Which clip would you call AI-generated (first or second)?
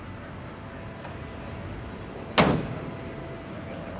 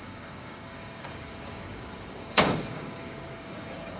second